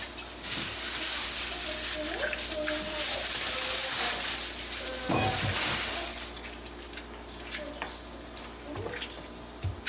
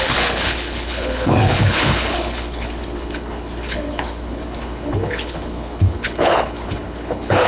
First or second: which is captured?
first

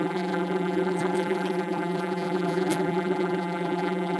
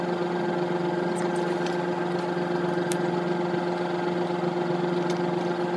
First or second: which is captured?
second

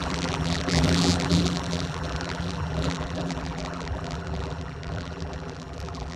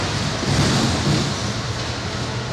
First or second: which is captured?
second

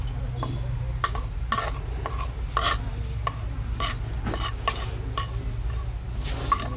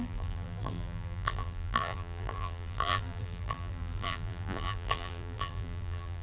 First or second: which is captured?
first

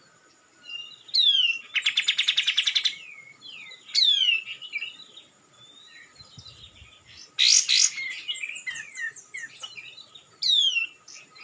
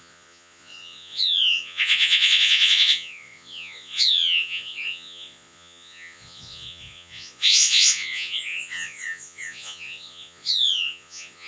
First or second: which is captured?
first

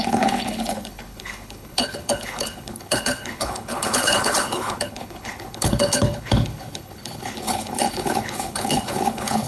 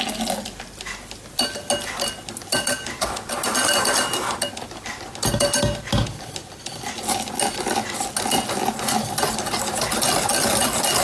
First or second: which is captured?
second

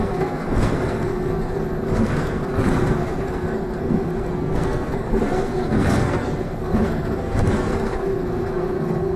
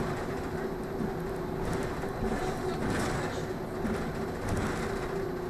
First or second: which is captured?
second